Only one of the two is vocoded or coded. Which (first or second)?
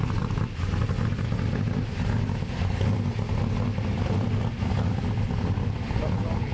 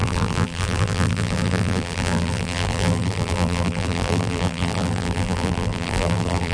second